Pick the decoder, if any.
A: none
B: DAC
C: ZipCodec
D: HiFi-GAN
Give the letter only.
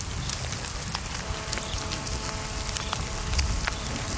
A